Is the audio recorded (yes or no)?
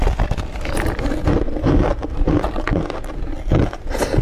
yes